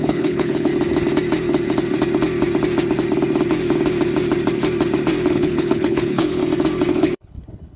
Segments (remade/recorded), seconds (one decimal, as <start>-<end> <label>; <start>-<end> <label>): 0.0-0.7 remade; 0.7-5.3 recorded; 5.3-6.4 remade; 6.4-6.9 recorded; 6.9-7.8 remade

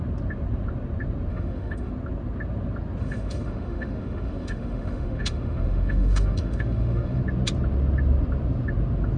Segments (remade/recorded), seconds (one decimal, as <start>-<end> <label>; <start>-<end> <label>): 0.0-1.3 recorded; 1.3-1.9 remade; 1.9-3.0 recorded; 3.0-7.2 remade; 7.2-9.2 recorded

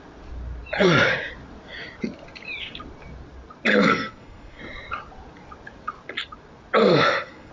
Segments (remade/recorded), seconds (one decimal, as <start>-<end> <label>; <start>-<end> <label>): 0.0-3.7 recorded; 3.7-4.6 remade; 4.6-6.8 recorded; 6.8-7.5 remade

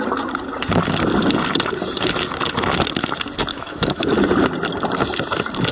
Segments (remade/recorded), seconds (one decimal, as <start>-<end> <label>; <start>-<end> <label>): 0.0-3.5 recorded; 3.5-4.1 remade; 4.1-5.7 recorded